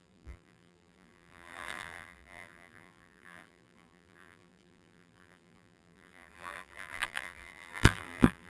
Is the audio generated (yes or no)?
yes